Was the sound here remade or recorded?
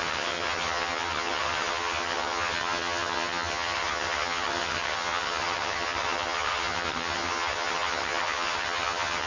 remade